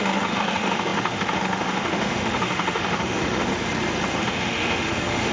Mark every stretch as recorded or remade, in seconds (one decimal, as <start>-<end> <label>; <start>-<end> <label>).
0.0-3.5 remade; 3.5-4.1 recorded; 4.1-5.3 remade